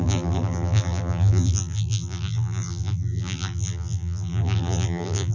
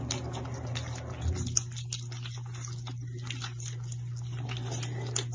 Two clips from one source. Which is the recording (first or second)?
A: second